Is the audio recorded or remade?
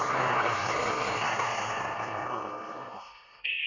remade